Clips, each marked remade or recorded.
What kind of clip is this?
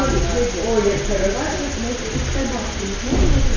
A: recorded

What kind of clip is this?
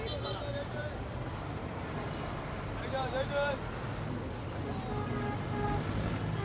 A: recorded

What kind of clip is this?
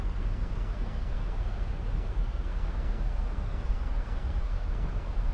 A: remade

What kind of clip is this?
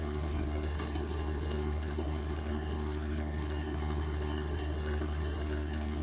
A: remade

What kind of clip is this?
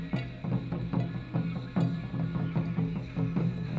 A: recorded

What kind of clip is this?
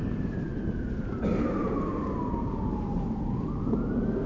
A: recorded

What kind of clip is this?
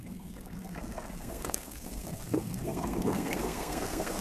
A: remade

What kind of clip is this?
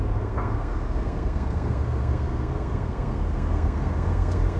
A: remade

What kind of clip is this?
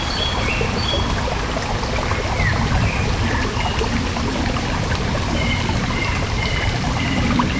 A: recorded